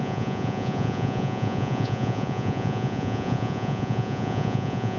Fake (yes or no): yes